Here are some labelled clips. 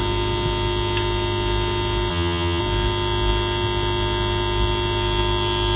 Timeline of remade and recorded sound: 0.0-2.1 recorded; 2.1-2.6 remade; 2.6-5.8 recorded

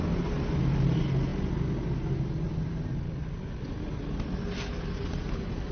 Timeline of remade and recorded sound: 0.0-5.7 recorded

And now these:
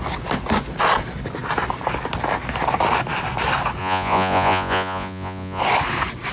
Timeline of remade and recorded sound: 0.0-3.8 recorded; 3.8-5.6 remade; 5.6-6.3 recorded